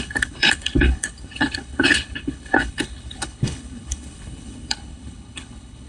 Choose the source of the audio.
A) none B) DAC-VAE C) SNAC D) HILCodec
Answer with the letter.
D